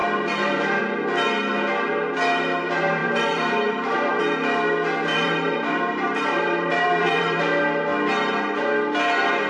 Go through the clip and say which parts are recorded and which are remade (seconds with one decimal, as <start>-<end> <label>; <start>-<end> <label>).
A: 0.0-0.8 remade; 0.8-3.0 recorded; 3.0-4.2 remade; 4.2-5.1 recorded; 5.1-7.4 remade; 7.4-9.5 recorded